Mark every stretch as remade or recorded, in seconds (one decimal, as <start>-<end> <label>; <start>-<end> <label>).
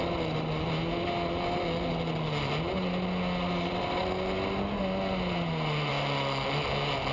0.0-7.1 recorded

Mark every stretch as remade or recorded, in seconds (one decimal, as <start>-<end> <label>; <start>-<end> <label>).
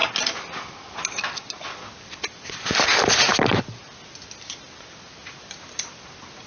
0.0-3.3 recorded; 3.3-3.8 remade; 3.8-6.5 recorded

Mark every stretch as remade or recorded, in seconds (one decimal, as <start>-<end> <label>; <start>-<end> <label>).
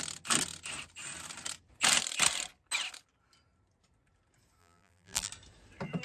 0.0-4.6 recorded; 4.6-5.3 remade; 5.3-6.0 recorded